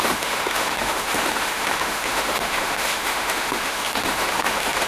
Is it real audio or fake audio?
fake